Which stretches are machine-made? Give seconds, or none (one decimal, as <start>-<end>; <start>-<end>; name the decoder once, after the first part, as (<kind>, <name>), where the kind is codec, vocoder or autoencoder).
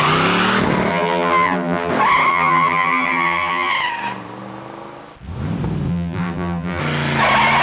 0.9-1.9 (vocoder, BigVGAN v2); 2.3-3.7; 5.9-6.8